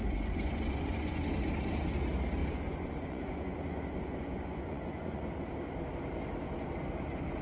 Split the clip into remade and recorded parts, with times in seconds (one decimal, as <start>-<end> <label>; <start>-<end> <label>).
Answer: 0.0-1.3 remade; 1.3-2.4 recorded; 2.4-5.3 remade; 5.3-7.4 recorded